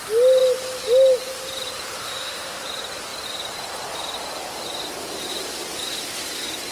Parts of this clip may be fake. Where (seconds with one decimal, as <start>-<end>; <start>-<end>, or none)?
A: 2.0-2.6

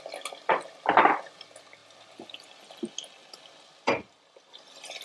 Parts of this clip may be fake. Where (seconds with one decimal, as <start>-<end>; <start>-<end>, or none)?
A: none

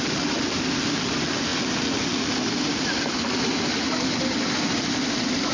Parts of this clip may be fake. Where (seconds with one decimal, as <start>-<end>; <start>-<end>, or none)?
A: none

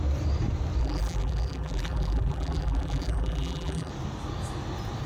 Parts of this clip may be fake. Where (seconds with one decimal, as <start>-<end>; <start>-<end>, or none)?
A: 0.8-3.9

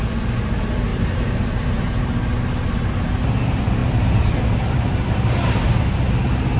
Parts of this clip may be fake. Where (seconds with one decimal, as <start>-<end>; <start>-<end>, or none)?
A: 0.9-1.8; 3.8-6.1

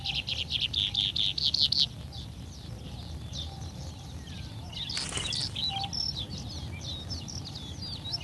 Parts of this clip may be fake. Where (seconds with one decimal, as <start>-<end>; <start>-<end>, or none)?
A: none

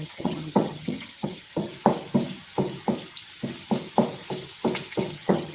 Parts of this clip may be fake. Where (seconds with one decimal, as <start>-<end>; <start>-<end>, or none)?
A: 0.0-1.7; 5.0-5.5